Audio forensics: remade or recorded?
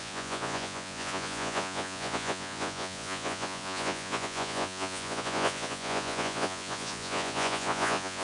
remade